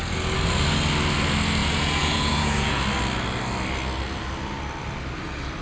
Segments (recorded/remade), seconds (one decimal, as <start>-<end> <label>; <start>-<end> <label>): 0.0-1.6 recorded; 1.6-2.8 remade; 2.8-5.6 recorded